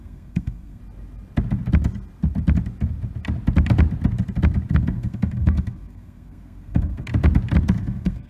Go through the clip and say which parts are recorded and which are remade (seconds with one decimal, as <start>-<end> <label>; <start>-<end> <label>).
0.0-0.8 remade; 0.8-4.7 recorded; 4.7-7.1 remade; 7.1-7.8 recorded; 7.8-8.3 remade